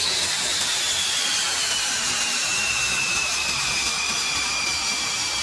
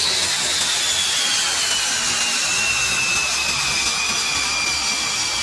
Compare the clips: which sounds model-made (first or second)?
first